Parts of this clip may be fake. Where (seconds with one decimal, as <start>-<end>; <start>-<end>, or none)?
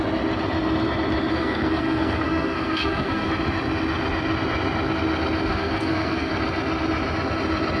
1.3-3.3; 5.5-6.3